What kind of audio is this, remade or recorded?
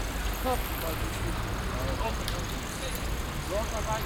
recorded